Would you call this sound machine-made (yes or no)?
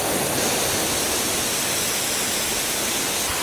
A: no